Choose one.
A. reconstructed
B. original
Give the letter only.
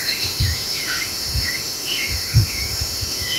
A